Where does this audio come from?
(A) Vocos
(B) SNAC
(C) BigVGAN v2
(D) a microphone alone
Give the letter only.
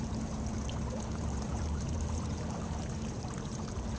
C